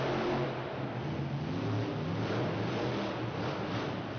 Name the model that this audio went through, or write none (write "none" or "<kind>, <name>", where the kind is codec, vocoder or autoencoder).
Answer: none